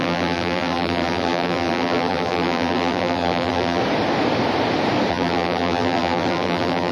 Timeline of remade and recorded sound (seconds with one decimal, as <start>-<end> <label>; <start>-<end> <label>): 0.0-3.8 remade; 3.8-5.1 recorded; 5.1-6.9 remade